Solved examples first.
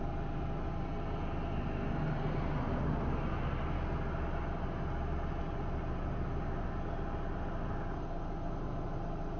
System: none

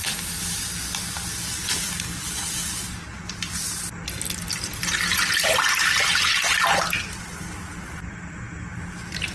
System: none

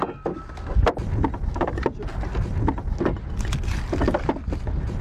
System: none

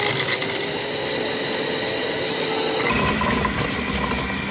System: none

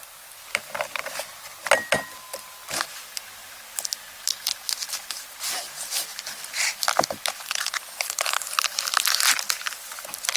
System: none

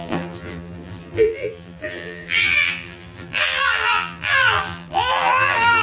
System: vocoder, BigVGAN v2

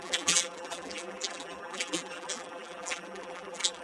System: vocoder, BigVGAN v2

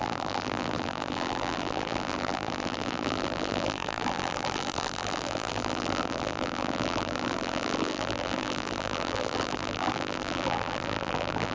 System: vocoder, BigVGAN v2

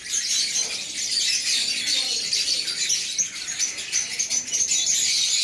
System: none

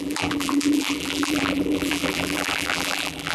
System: vocoder, BigVGAN v2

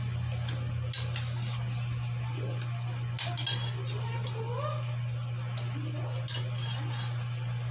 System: none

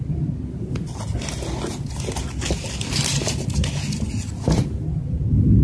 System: none